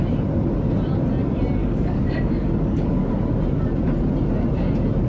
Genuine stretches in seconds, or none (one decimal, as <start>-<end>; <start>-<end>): 0.0-1.6; 3.1-5.1